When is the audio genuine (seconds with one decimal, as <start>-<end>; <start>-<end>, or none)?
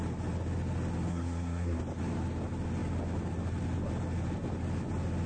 0.0-1.1; 1.8-5.3